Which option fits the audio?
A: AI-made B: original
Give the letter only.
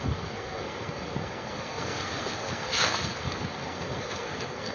A